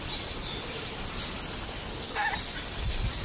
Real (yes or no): yes